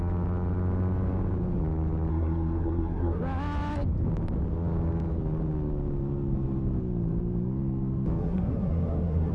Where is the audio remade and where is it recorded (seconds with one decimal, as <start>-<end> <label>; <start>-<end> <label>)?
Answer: 0.0-2.1 recorded; 2.1-3.2 remade; 3.2-8.2 recorded; 8.2-9.3 remade